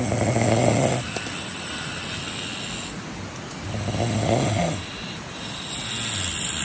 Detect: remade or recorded recorded